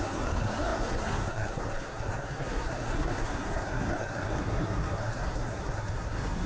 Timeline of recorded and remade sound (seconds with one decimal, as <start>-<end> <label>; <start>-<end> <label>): 0.0-6.5 remade